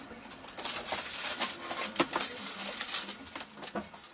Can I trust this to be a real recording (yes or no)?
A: yes